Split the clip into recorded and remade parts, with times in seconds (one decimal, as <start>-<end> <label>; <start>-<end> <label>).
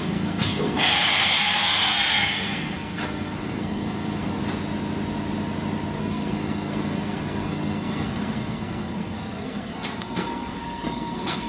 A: 0.0-4.4 remade; 4.4-6.0 recorded; 6.0-11.5 remade